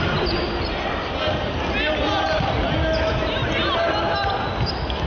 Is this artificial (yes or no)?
no